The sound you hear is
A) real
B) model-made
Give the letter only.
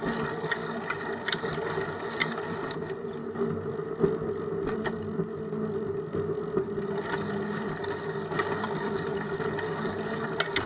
A